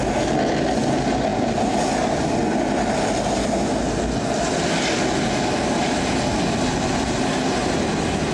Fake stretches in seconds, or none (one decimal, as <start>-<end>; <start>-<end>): none